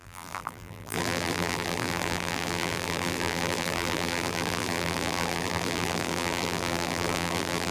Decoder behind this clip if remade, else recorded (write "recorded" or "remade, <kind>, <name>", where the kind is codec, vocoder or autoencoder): remade, vocoder, BigVGAN v2